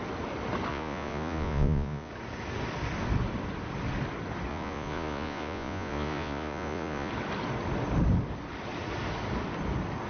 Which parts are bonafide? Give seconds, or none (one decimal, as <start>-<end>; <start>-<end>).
0.0-0.7; 2.1-4.5; 7.1-10.1

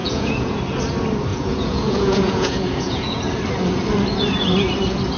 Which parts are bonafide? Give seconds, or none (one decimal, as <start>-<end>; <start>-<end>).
0.6-1.3; 3.3-5.2

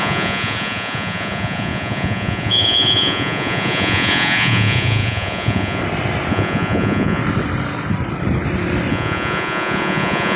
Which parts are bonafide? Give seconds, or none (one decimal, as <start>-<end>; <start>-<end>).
5.8-6.3; 7.2-8.9